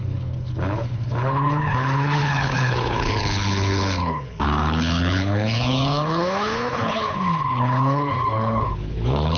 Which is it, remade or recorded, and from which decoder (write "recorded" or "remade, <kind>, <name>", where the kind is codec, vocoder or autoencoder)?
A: remade, codec, HILCodec